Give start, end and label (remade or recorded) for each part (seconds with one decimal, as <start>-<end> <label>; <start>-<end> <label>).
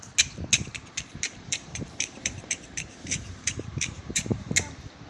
0.0-1.3 recorded; 1.3-4.4 remade; 4.4-5.1 recorded